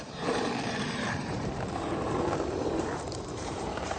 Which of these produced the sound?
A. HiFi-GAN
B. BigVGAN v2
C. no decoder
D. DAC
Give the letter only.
B